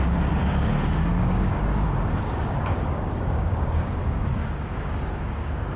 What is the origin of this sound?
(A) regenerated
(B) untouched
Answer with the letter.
A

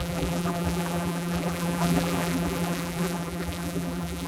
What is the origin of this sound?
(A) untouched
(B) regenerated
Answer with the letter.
B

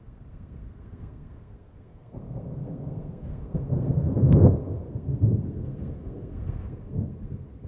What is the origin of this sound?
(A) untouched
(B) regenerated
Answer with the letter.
B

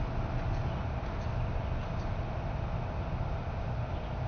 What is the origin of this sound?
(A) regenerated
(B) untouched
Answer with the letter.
B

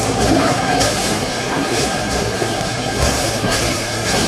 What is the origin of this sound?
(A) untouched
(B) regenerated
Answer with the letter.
B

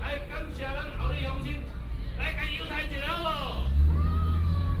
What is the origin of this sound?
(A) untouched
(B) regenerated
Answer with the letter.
A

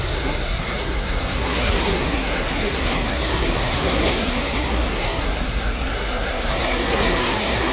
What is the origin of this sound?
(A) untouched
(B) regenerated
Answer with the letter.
B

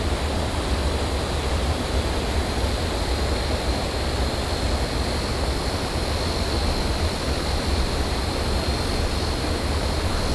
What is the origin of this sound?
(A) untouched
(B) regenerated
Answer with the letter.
A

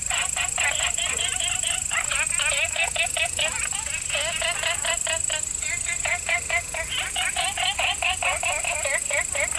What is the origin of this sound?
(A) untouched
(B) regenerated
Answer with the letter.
A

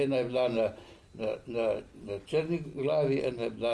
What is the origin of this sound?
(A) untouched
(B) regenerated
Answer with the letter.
A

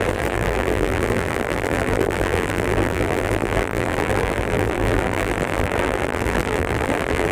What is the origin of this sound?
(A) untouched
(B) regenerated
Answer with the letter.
B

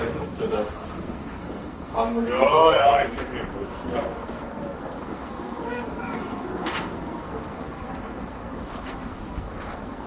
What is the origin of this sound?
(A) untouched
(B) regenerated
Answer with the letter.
B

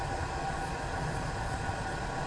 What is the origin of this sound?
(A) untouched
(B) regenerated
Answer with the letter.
B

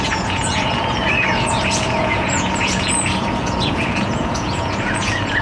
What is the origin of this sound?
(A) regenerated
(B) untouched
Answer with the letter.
A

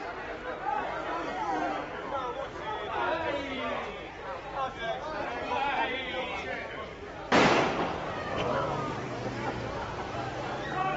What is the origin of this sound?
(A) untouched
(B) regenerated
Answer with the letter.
B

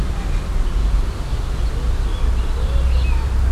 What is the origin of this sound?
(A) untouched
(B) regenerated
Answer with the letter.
A